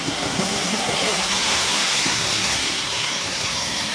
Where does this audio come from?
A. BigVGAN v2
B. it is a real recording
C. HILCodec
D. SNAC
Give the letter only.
D